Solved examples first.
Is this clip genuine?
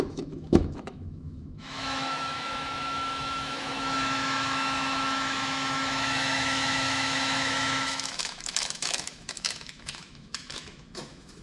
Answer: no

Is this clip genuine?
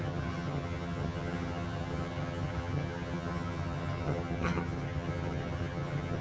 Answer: no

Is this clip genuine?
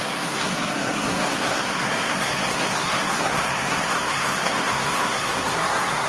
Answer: no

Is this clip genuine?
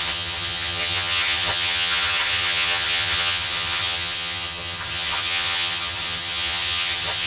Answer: no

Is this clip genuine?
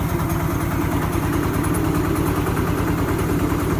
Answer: yes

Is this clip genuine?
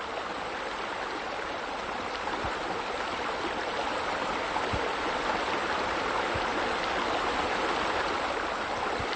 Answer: yes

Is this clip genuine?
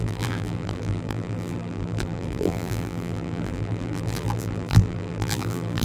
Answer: no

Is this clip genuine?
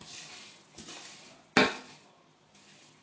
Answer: yes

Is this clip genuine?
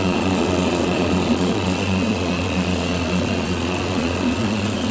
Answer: no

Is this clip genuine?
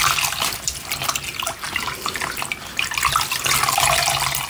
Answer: yes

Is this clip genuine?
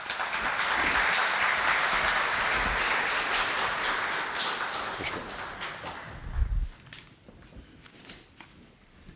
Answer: yes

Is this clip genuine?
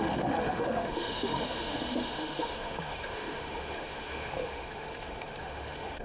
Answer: no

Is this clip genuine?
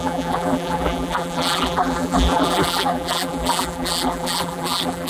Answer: no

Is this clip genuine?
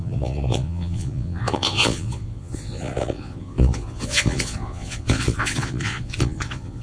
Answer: no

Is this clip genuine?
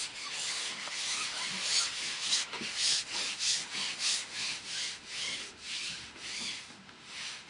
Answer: no